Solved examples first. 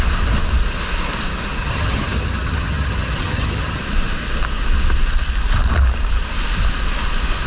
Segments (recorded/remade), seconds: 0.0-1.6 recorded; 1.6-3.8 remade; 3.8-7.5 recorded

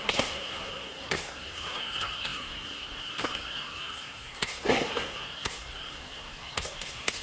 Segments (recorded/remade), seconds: 0.0-7.2 remade